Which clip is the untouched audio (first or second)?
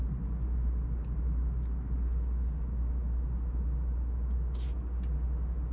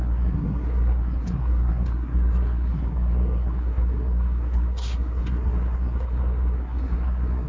first